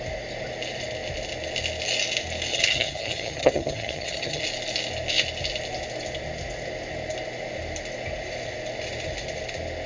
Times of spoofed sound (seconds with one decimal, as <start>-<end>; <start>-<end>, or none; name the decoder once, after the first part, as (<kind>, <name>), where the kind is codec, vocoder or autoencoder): 2.5-4.4 (vocoder, HiFi-GAN)